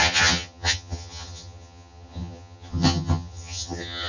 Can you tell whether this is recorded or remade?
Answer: remade